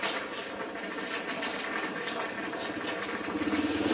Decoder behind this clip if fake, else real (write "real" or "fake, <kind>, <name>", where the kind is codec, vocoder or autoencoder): real